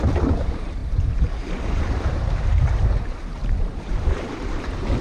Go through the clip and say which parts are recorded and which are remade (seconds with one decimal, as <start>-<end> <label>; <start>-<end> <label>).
0.0-5.0 remade